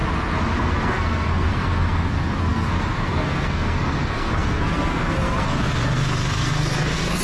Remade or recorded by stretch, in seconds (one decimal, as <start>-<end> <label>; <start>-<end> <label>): 0.0-0.6 recorded; 0.6-7.2 remade